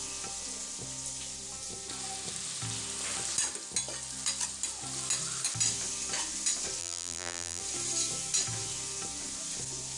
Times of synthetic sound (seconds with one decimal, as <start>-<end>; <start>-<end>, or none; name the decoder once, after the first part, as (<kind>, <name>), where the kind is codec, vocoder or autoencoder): 6.8-7.6 (vocoder, BigVGAN v2)